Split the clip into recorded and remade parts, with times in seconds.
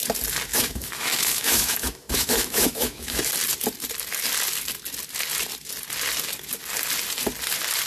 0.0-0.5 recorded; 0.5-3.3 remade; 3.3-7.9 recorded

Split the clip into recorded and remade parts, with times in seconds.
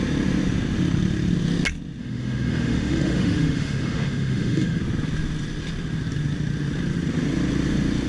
0.0-2.0 recorded; 2.0-4.8 remade; 4.8-8.1 recorded